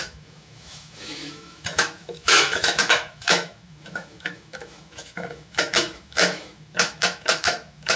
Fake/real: fake